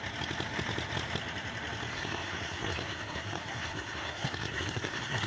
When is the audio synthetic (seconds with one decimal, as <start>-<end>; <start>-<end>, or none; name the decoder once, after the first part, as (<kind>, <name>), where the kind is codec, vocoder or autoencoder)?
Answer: 1.9-5.3 (codec, SNAC)